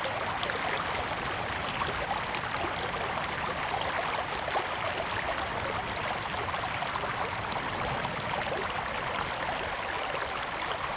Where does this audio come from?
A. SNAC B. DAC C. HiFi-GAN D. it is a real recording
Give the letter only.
D